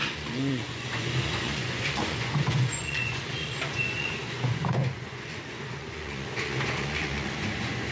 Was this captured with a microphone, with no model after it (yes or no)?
no